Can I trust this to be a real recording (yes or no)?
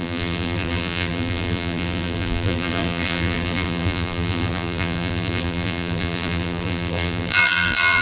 no